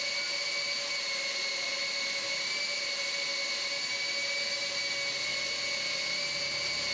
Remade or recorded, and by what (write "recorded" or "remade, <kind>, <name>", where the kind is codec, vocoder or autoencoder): recorded